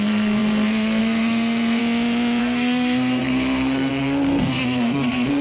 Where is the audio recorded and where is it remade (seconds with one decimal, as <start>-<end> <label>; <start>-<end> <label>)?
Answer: 0.0-1.8 remade; 1.8-2.4 recorded; 2.4-5.4 remade